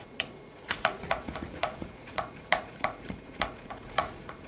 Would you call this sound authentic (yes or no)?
no